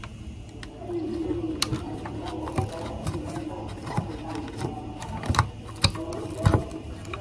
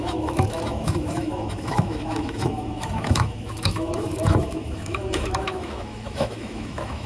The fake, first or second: second